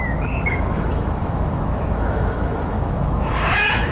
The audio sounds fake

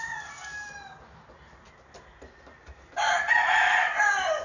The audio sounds real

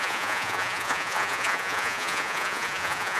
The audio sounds fake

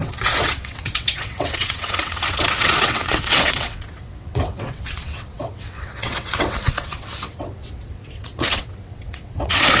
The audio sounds fake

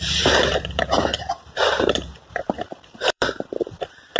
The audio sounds fake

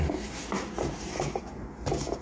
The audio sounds real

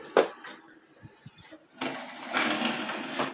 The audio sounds real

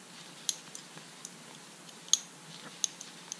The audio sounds real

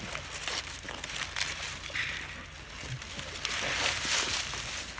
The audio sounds real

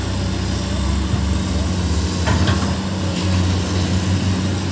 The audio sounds real